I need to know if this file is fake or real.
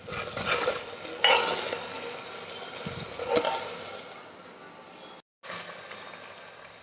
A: real